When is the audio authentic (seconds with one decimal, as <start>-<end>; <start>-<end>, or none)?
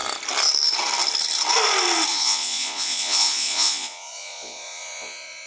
0.0-2.1